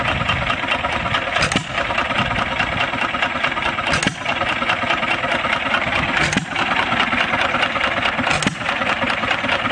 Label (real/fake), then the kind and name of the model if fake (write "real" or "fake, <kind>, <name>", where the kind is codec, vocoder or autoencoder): real